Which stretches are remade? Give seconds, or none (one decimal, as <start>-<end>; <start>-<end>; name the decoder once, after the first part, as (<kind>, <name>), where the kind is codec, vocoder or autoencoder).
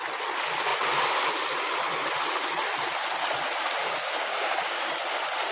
3.8-5.0 (codec, DAC)